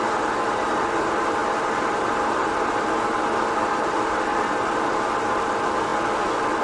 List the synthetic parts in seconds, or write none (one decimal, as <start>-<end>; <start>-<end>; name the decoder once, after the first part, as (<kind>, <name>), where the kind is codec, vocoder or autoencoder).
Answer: none